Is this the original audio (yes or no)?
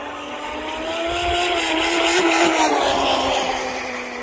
yes